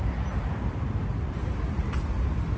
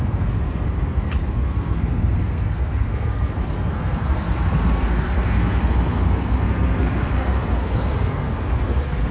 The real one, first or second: first